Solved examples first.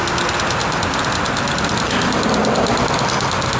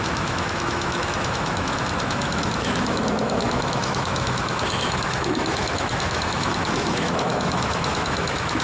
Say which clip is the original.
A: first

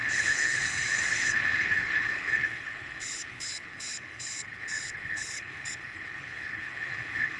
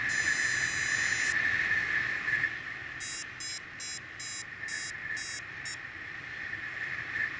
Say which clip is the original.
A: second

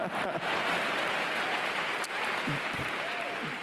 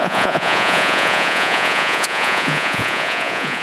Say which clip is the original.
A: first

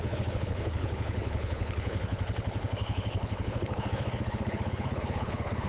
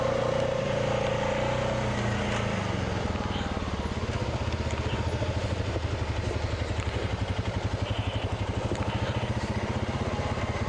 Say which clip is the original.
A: second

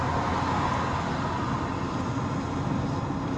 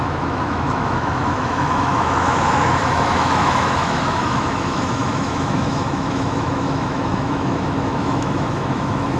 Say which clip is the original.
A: first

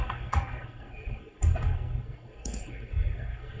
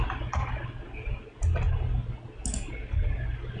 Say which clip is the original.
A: second